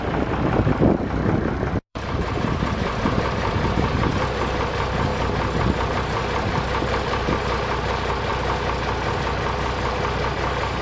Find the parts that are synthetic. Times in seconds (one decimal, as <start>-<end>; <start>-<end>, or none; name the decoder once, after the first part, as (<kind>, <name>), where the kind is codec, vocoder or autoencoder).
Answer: 1.9-4.1 (vocoder, BigVGAN v2)